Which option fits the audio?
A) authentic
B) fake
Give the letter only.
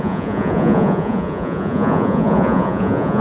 B